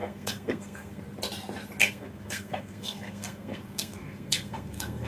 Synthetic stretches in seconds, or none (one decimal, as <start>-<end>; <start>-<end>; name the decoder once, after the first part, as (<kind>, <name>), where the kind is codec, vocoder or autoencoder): 0.0-1.0 (codec, SNAC); 1.8-5.1